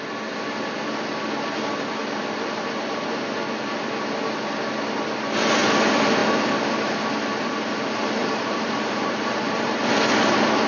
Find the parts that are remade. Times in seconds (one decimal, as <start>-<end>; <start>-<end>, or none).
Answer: 2.0-3.4; 8.2-9.8